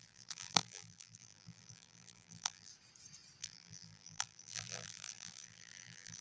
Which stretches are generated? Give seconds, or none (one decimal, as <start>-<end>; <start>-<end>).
0.0-2.7; 3.4-6.2